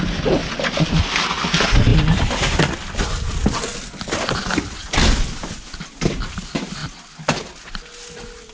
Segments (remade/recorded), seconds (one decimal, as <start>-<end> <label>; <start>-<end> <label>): 0.0-1.9 recorded; 1.9-3.6 remade; 3.6-4.8 recorded; 4.8-5.6 remade; 5.6-6.8 recorded; 6.8-7.4 remade; 7.4-8.5 recorded

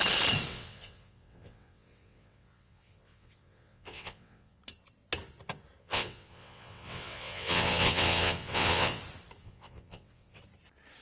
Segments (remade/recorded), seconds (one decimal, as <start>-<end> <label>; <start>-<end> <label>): 0.0-0.5 recorded; 0.5-4.6 remade; 4.6-5.8 recorded; 5.8-9.0 remade; 9.0-9.4 recorded; 9.4-10.4 remade; 10.4-11.0 recorded

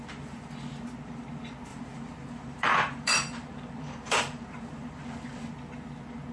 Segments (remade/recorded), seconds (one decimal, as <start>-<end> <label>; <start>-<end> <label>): 0.0-1.7 recorded; 1.7-5.5 remade; 5.5-6.3 recorded

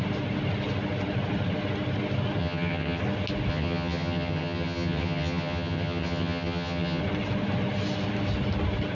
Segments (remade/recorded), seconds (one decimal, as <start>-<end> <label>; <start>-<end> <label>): 0.0-2.4 recorded; 2.4-3.0 remade; 3.0-3.5 recorded; 3.5-7.0 remade; 7.0-8.9 recorded

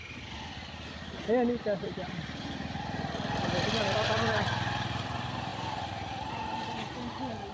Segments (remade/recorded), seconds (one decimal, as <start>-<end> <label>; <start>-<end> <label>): 0.0-7.5 recorded